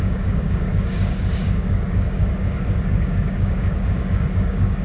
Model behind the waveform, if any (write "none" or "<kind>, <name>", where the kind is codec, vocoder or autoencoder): codec, DAC